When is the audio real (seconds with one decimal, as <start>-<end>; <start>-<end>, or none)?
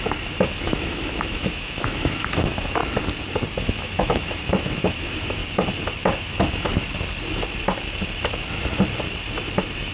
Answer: 2.8-3.6; 5.4-6.2; 6.7-9.9